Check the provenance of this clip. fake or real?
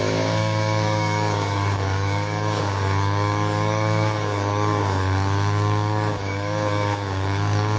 fake